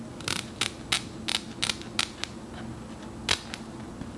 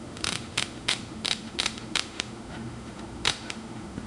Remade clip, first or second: second